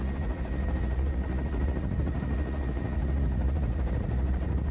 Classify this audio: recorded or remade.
remade